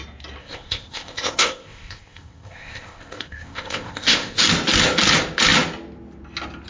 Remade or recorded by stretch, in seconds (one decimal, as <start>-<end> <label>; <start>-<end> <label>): 0.0-0.4 recorded; 0.4-4.4 remade; 4.4-6.7 recorded